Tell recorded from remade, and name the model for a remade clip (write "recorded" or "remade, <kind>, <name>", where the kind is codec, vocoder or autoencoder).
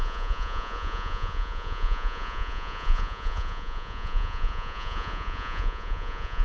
remade, vocoder, Vocos